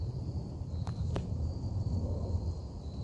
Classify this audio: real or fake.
real